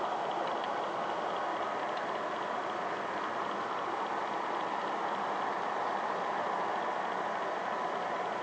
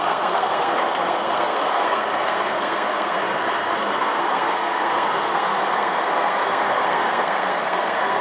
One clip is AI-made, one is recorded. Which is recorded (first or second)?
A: first